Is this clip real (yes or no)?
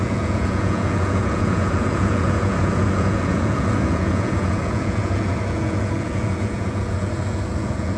no